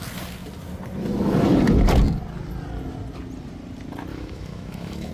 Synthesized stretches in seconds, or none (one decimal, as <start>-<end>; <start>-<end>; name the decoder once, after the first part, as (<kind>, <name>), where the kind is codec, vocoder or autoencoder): 4.1-5.1 (autoencoder, DAC-VAE)